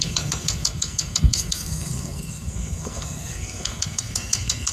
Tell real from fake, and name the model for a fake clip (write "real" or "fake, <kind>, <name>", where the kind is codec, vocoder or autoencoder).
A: fake, codec, SNAC